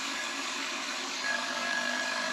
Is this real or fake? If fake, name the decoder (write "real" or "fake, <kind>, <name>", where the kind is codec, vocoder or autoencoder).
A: fake, codec, DAC